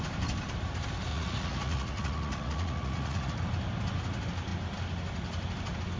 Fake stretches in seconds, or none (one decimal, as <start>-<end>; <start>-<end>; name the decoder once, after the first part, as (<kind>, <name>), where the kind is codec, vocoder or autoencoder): 1.1-3.4 (vocoder, Vocos)